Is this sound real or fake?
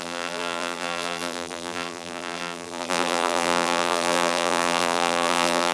fake